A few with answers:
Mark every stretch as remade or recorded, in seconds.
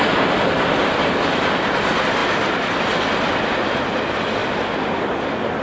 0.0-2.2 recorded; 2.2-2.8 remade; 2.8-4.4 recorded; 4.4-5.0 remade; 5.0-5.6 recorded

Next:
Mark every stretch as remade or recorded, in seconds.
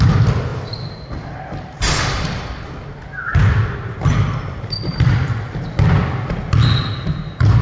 0.0-7.6 recorded